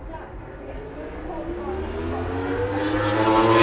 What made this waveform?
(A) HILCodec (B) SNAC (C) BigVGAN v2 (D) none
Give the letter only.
D